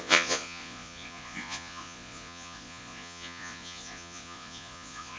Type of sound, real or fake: fake